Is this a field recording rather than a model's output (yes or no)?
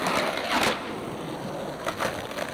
yes